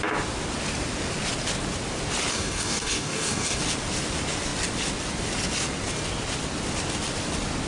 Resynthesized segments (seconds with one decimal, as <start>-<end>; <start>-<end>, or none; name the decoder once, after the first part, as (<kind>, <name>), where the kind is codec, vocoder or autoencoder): 2.3-3.6 (codec, DAC)